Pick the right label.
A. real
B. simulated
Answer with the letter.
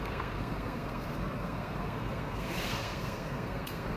B